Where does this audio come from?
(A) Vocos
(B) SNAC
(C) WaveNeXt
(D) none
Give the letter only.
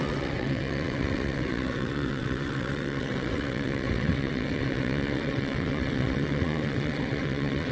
C